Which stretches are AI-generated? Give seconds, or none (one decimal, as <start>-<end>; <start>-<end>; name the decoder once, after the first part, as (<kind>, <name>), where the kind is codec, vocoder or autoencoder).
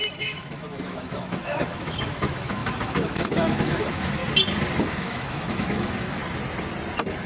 0.0-4.2 (autoencoder, DAC-VAE); 4.8-6.2